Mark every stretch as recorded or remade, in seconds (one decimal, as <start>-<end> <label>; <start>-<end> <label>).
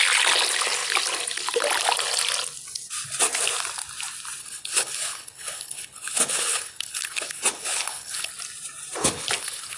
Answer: 0.0-4.4 recorded; 4.4-8.3 remade; 8.3-9.0 recorded; 9.0-9.8 remade